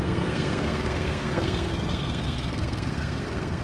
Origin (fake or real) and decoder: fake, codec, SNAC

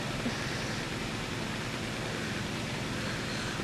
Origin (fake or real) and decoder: real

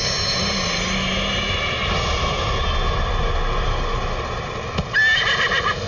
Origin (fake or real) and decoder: real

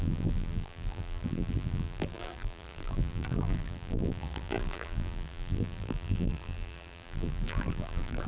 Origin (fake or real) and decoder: fake, vocoder, BigVGAN v2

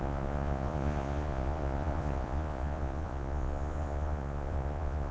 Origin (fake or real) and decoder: fake, vocoder, Vocos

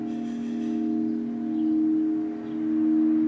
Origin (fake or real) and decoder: real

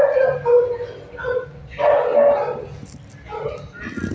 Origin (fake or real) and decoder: real